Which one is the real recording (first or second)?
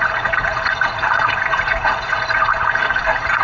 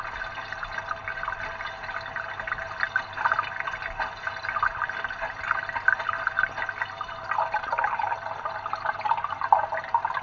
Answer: second